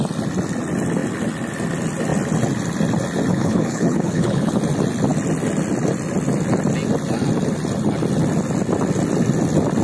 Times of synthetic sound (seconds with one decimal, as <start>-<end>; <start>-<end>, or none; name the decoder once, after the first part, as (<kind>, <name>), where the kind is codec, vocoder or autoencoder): 3.3-4.6 (codec, HILCodec)